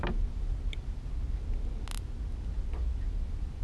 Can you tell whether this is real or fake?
real